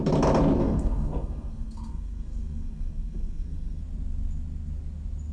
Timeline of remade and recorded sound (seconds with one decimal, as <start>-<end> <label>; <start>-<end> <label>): 0.0-0.6 recorded; 0.6-3.8 remade; 3.8-5.3 recorded